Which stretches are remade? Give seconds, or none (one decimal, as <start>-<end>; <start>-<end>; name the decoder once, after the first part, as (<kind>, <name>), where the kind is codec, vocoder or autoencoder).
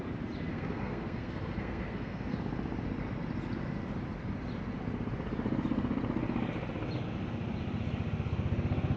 0.5-2.4 (codec, SNAC)